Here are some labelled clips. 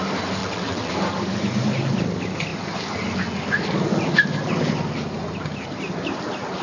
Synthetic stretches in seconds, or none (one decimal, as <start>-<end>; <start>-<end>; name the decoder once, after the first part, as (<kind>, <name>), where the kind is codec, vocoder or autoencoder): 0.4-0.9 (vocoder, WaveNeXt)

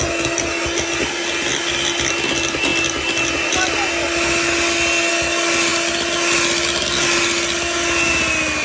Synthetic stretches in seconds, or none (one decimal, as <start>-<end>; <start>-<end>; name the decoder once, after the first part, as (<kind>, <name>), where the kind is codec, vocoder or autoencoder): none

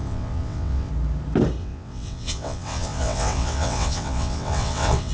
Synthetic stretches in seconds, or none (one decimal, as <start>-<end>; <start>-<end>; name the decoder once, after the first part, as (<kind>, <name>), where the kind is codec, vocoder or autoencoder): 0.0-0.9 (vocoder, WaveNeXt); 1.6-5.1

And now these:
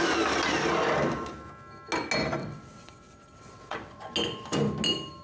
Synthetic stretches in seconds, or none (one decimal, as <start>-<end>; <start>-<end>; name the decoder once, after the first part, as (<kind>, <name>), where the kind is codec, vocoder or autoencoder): 2.4-4.0 (vocoder, WaveNeXt)

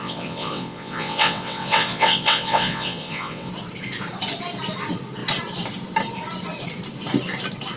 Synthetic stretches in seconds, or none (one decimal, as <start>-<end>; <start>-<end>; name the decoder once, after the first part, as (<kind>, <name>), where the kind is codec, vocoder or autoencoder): 0.0-3.5 (vocoder, WaveNeXt)

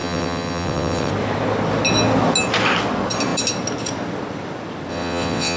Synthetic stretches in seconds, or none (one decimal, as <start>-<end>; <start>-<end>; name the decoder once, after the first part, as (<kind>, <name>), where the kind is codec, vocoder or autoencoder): 0.0-1.1 (vocoder, WaveNeXt); 4.9-5.6

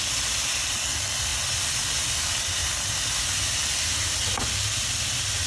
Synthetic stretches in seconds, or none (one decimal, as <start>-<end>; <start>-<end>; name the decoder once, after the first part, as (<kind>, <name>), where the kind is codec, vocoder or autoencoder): none